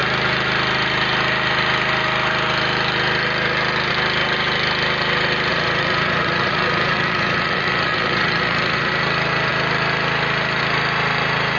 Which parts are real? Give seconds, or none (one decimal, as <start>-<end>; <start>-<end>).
0.0-5.5; 8.9-11.6